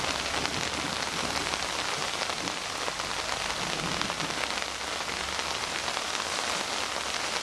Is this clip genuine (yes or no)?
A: yes